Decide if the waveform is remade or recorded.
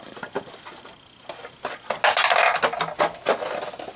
recorded